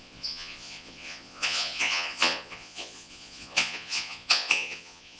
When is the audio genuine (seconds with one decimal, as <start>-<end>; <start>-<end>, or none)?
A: none